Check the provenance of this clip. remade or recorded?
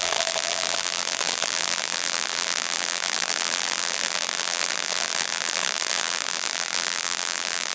remade